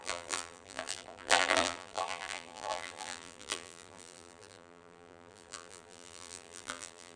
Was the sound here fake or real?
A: fake